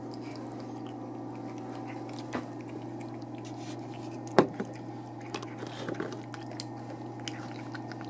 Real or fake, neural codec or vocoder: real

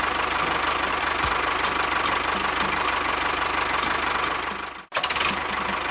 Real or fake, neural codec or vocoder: real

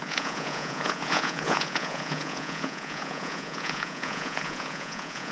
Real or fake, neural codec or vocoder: fake, vocoder, Vocos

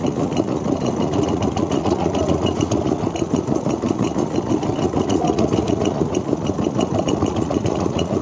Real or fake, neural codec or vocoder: fake, vocoder, Vocos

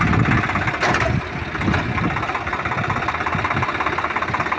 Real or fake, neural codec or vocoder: real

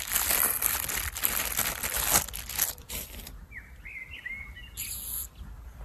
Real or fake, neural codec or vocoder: real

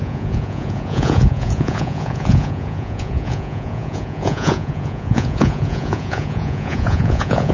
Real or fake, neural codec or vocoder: fake, vocoder, Vocos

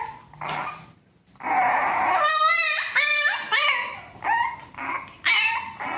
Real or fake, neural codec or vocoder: real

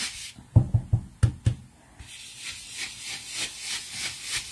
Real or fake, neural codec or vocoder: real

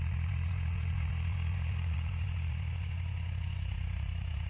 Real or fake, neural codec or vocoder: fake, vocoder, Vocos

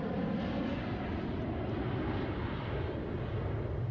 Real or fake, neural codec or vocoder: real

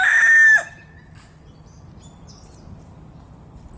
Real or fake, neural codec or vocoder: real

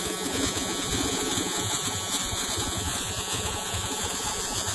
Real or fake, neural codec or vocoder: fake, vocoder, Vocos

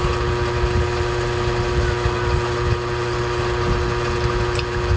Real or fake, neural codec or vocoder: real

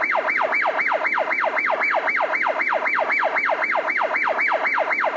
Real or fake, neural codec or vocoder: real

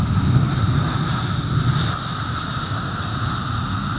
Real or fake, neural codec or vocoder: real